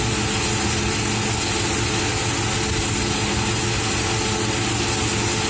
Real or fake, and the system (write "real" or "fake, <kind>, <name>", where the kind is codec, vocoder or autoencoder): real